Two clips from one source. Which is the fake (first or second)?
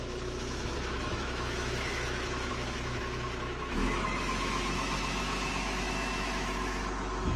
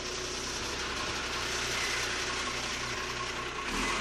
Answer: first